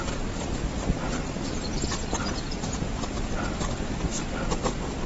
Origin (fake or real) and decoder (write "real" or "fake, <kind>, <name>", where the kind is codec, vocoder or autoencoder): real